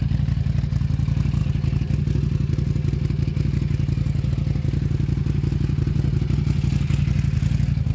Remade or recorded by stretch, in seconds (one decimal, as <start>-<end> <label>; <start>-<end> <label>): 0.0-7.9 recorded